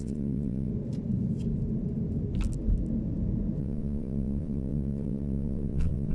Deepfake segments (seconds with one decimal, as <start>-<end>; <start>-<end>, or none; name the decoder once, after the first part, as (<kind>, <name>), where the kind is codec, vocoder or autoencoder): 0.0-0.7 (vocoder, WaveNeXt); 3.6-6.1